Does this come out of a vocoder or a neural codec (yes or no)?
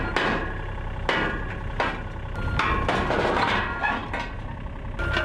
no